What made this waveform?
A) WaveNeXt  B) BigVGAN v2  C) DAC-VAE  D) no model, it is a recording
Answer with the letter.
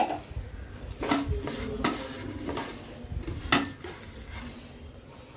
D